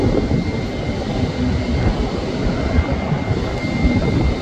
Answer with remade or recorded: recorded